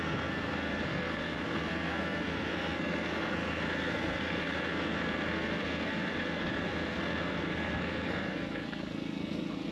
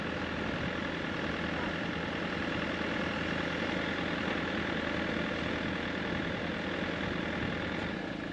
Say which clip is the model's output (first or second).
first